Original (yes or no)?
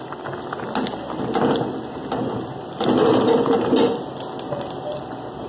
yes